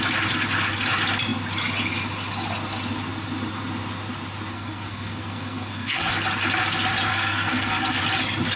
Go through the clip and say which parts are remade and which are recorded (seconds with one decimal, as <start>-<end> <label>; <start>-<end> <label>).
0.0-4.5 recorded; 4.5-6.1 remade; 6.1-7.1 recorded; 7.1-8.0 remade; 8.0-8.6 recorded